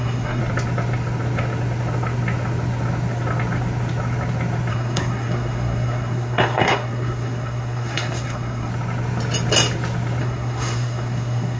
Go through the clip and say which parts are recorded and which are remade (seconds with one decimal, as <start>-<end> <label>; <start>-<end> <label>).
0.0-0.4 remade; 0.4-4.7 recorded; 4.7-8.7 remade; 8.7-10.2 recorded; 10.2-11.6 remade